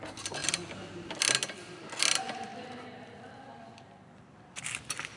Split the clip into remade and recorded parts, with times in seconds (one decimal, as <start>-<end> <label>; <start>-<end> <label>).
0.0-5.2 recorded